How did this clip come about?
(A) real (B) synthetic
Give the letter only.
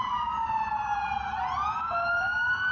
A